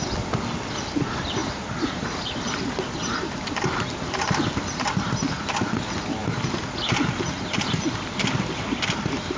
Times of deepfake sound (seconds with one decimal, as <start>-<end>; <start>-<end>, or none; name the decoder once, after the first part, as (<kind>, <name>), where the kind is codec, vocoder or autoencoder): 1.4-3.4 (vocoder, BigVGAN v2)